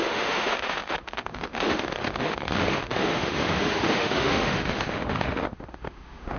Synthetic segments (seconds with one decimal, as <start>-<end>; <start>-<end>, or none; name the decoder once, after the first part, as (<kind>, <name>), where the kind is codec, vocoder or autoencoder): 0.0-6.4 (autoencoder, DAC-VAE)